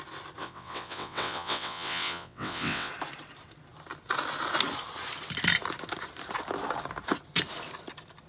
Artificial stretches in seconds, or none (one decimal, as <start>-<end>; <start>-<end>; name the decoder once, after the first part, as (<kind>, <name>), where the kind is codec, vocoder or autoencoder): 0.4-2.9 (vocoder, WaveNeXt)